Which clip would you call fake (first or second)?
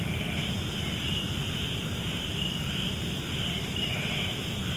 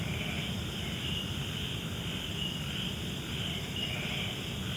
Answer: first